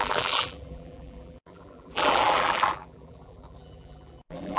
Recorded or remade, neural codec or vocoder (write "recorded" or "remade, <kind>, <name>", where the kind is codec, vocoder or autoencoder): remade, vocoder, BigVGAN v2